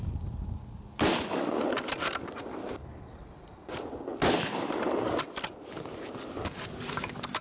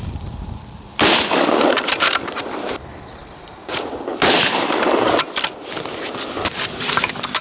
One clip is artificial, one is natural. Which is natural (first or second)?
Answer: first